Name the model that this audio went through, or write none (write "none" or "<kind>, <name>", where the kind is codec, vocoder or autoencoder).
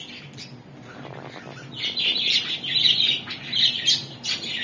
none